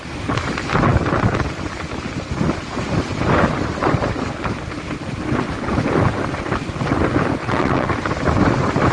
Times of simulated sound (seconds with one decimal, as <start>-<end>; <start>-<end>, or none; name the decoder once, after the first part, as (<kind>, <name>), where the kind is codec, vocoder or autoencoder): 7.4-7.9 (vocoder, WaveNeXt)